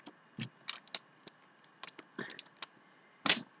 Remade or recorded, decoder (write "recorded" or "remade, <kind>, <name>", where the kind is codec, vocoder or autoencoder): recorded